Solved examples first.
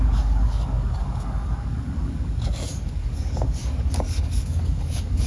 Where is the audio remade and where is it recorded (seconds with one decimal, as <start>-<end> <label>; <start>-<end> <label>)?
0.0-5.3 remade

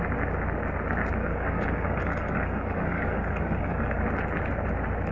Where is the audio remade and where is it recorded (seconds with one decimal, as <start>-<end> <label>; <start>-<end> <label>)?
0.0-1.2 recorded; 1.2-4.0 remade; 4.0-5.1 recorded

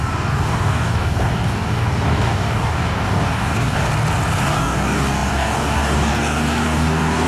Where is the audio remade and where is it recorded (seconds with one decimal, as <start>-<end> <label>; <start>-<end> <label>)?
0.0-3.9 remade; 3.9-4.4 recorded; 4.4-7.3 remade

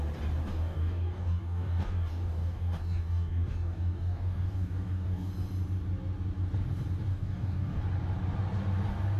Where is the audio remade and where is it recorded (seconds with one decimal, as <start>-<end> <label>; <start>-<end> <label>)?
0.0-0.5 recorded; 0.5-5.3 remade; 5.3-7.1 recorded; 7.1-7.8 remade; 7.8-9.2 recorded